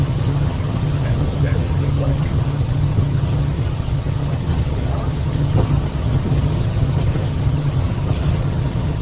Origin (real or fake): fake